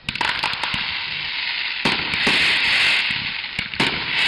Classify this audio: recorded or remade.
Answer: recorded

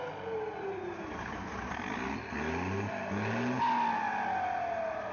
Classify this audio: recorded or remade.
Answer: recorded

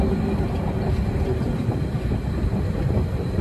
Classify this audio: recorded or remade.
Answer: recorded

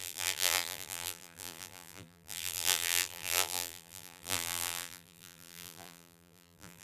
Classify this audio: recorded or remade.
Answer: remade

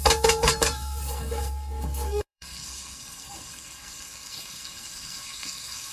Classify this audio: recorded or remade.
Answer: remade